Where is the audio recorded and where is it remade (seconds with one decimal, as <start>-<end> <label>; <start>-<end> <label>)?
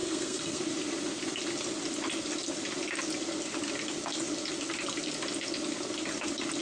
0.0-0.6 remade; 0.6-6.6 recorded